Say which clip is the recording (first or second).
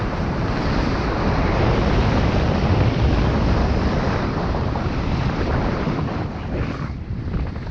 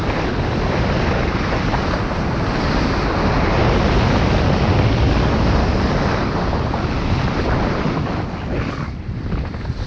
second